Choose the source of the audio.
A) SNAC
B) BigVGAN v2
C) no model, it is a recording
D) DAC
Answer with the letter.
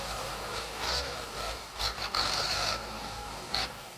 D